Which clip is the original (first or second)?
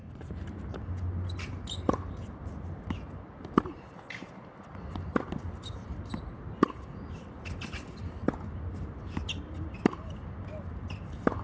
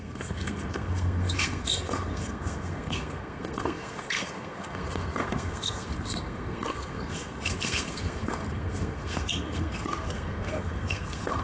first